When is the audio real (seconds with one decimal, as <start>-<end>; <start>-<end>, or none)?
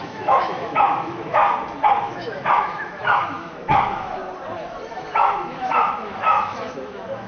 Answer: 1.4-2.0; 4.2-4.9